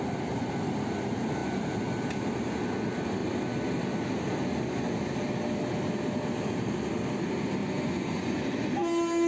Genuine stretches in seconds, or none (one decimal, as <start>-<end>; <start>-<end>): 0.0-7.6; 8.4-9.3